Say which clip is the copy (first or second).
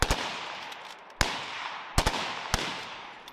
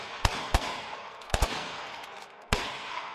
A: second